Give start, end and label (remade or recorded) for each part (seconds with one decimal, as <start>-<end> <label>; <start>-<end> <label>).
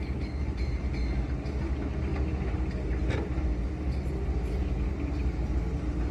0.0-6.1 recorded